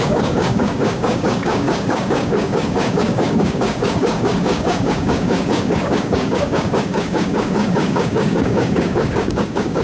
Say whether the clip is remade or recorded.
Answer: remade